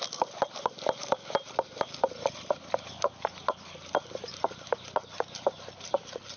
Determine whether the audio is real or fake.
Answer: real